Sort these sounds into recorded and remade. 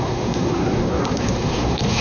remade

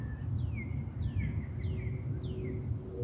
recorded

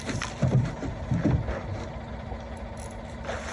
recorded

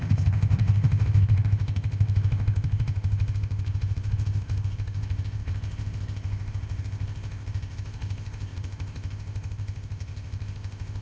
remade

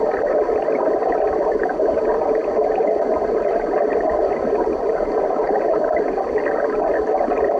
recorded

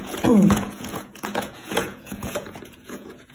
remade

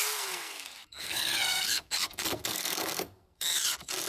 remade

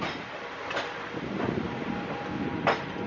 recorded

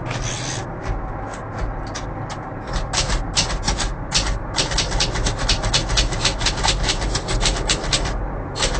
recorded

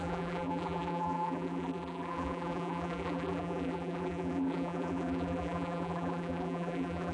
remade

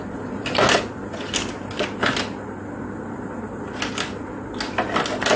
recorded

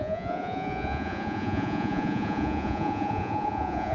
remade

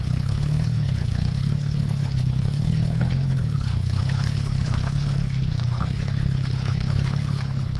remade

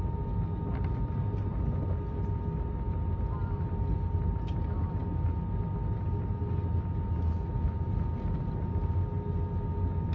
recorded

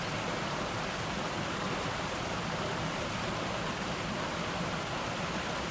recorded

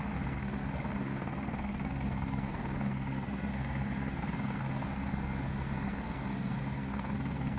remade